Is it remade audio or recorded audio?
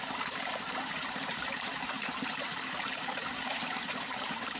remade